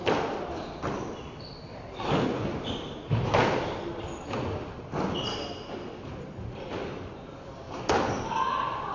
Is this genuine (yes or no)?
yes